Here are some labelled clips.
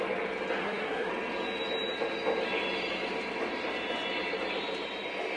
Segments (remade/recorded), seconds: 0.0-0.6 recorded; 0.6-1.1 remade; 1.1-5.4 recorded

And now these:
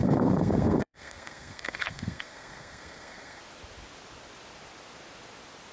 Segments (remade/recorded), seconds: 0.0-3.4 remade; 3.4-5.7 recorded

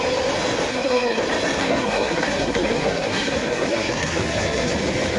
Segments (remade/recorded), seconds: 0.0-0.7 recorded; 0.7-1.2 remade; 1.2-1.6 recorded; 1.6-4.7 remade; 4.7-5.2 recorded

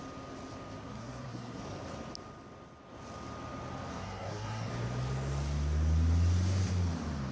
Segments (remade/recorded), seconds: 0.0-0.8 recorded; 0.8-1.6 remade; 1.6-3.9 recorded; 3.9-4.7 remade; 4.7-7.3 recorded

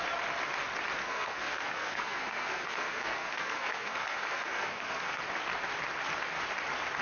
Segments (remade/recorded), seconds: 0.0-1.0 recorded; 1.0-5.2 remade; 5.2-7.0 recorded

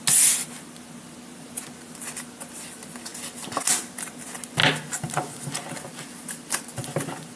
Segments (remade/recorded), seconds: 0.0-7.4 recorded

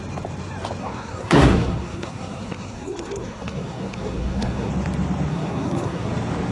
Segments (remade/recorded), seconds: 0.0-0.8 recorded; 0.8-4.7 remade; 4.7-5.3 recorded; 5.3-6.1 remade; 6.1-6.5 recorded